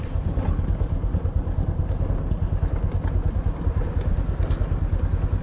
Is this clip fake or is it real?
real